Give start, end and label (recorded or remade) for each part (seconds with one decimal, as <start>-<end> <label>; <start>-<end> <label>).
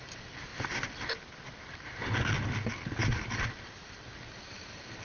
0.0-5.0 recorded